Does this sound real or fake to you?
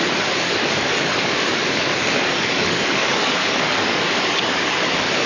fake